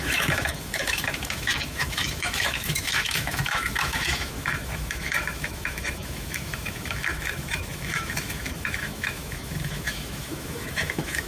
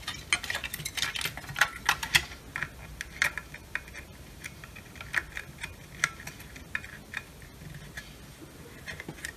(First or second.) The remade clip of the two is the first